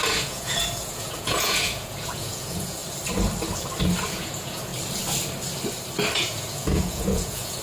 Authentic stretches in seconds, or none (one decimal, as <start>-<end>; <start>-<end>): 2.8-4.1; 4.7-6.2